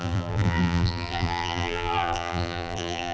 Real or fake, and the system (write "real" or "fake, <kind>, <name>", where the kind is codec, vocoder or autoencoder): fake, vocoder, BigVGAN v2